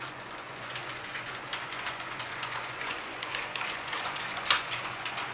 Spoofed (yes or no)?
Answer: yes